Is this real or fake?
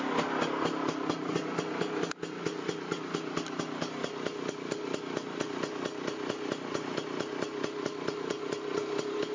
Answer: real